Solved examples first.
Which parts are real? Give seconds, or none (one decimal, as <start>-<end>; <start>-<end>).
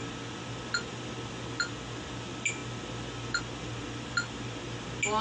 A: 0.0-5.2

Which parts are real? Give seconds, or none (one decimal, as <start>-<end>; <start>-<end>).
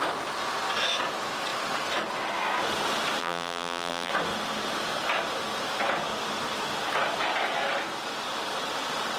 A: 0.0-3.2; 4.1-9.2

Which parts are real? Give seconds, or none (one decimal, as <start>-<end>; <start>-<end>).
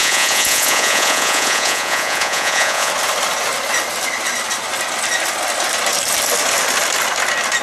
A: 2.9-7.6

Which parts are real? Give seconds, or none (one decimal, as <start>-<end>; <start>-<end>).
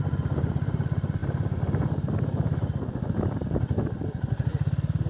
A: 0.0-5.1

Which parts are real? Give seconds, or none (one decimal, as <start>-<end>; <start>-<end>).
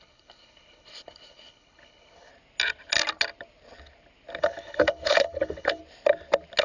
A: 2.3-4.4; 5.8-6.6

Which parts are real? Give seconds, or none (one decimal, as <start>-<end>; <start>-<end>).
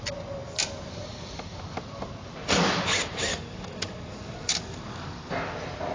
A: 0.0-3.3; 5.3-5.9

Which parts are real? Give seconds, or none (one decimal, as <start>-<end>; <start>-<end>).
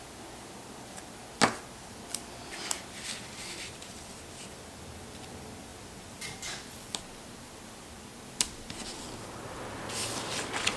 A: 0.0-5.7; 6.2-10.8